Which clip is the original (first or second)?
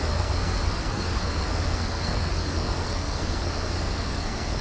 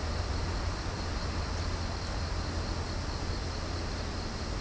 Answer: second